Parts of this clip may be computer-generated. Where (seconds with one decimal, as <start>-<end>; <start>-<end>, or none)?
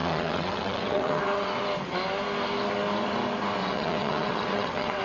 0.0-1.6; 3.6-5.0